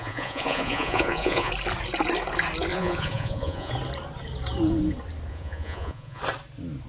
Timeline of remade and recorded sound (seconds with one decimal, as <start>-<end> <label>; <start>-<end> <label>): 0.0-1.5 remade; 1.5-2.7 recorded; 2.7-3.7 remade; 3.7-5.3 recorded; 5.3-6.2 remade; 6.2-6.9 recorded